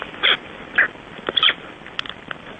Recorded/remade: remade